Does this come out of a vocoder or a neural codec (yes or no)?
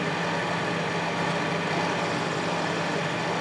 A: no